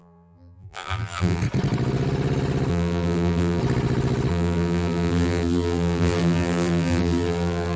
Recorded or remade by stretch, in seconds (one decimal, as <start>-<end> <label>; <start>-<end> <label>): 0.0-1.4 remade; 1.4-2.7 recorded; 2.7-3.6 remade; 3.6-4.3 recorded; 4.3-7.8 remade

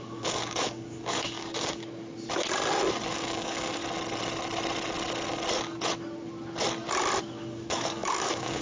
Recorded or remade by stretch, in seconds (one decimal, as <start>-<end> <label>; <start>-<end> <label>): 0.0-1.8 remade; 1.8-3.1 recorded; 3.1-3.8 remade; 3.8-7.2 recorded; 7.2-8.6 remade

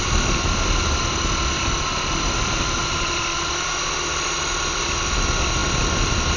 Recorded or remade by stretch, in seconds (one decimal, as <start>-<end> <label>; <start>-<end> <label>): 0.0-6.4 recorded

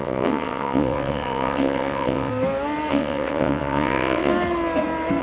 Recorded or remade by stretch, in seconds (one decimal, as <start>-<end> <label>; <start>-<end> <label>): 0.0-2.3 remade; 2.3-2.9 recorded; 2.9-4.3 remade; 4.3-5.2 recorded

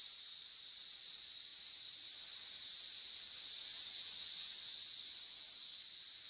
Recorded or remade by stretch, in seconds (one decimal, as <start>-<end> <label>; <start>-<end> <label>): 0.0-3.7 recorded; 3.7-5.1 remade; 5.1-6.3 recorded

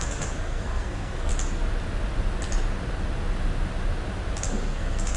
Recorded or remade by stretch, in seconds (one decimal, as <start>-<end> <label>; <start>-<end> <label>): 0.0-1.3 remade; 1.3-4.4 recorded; 4.4-5.2 remade

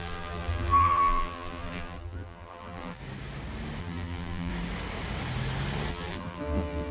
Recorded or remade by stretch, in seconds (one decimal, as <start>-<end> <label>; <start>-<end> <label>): 0.0-3.0 remade; 3.0-3.8 recorded; 3.8-4.5 remade; 4.5-5.9 recorded; 5.9-6.9 remade

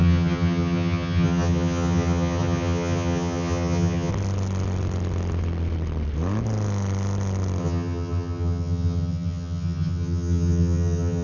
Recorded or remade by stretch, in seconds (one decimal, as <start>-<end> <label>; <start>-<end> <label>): 0.0-4.1 remade; 4.1-7.6 recorded; 7.6-11.2 remade